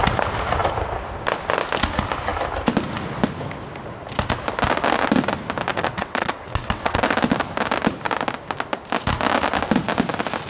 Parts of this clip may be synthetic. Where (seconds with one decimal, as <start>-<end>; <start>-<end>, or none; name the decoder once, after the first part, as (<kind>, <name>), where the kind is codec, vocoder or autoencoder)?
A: 5.7-7.0 (vocoder, WaveNeXt)